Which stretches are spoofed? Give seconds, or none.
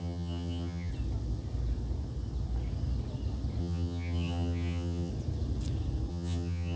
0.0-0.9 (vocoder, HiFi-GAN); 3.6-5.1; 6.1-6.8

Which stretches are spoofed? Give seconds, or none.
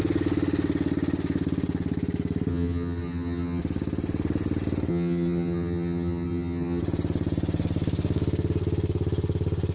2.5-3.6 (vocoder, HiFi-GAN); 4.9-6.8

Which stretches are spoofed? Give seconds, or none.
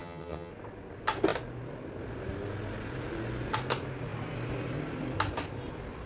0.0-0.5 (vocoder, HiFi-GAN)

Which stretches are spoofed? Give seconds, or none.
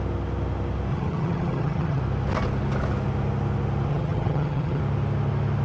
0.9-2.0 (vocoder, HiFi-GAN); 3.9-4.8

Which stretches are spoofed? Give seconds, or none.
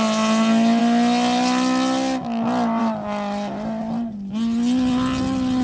none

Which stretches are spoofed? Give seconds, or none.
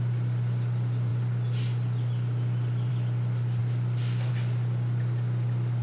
none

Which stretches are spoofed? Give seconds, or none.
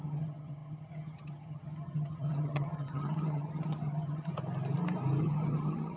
0.0-4.3 (vocoder, HiFi-GAN); 5.2-6.0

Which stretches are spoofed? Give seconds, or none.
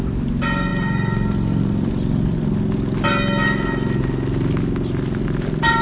none